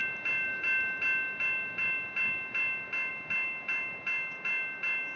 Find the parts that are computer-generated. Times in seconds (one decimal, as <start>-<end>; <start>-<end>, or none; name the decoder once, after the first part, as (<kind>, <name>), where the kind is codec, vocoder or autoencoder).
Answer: none